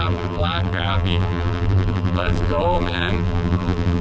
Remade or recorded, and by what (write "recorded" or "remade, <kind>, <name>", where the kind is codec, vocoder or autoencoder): remade, vocoder, BigVGAN v2